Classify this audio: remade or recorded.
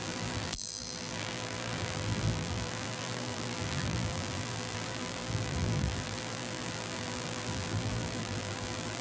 remade